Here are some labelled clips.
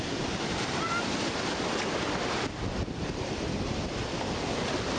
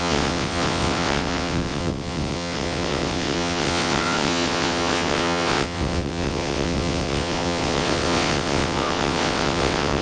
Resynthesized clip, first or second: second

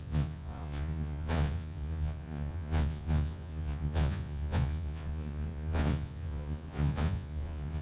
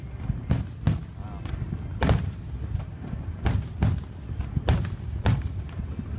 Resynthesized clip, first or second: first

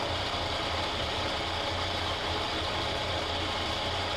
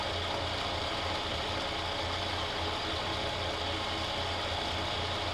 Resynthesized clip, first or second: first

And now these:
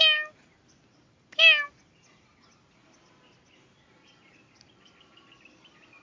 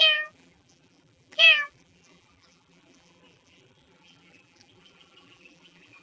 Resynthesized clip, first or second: second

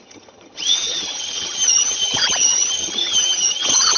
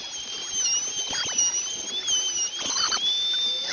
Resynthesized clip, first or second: first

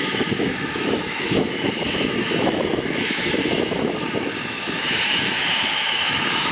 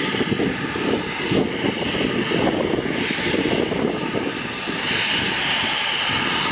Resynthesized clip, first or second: first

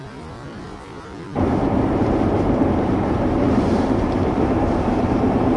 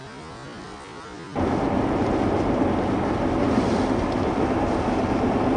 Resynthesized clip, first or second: first